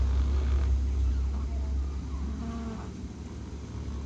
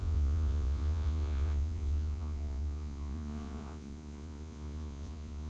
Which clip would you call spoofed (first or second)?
second